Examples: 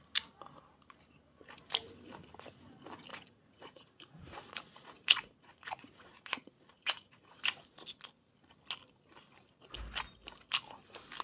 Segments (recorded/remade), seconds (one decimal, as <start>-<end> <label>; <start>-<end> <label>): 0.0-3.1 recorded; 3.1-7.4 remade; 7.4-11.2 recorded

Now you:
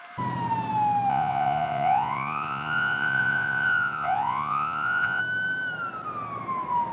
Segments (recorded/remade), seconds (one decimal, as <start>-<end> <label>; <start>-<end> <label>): 0.0-1.1 recorded; 1.1-5.2 remade; 5.2-6.9 recorded

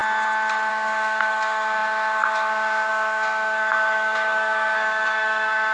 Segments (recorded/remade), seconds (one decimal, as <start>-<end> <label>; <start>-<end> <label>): 0.0-0.7 recorded; 0.7-5.7 remade

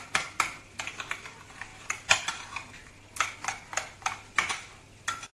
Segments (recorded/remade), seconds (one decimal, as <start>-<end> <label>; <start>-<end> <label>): 0.0-5.4 recorded

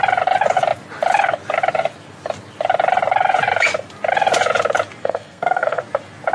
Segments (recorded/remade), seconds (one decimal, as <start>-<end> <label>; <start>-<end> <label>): 0.0-5.0 recorded; 5.0-5.8 remade; 5.8-6.3 recorded

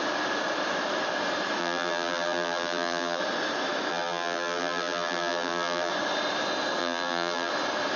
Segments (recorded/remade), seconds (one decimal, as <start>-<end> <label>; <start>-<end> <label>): 0.0-1.6 recorded; 1.6-3.2 remade; 3.2-3.9 recorded; 3.9-5.9 remade; 5.9-6.8 recorded; 6.8-7.5 remade; 7.5-8.0 recorded

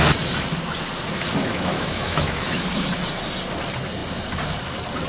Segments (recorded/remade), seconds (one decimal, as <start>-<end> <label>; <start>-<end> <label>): 0.0-1.4 recorded; 1.4-2.6 remade; 2.6-5.1 recorded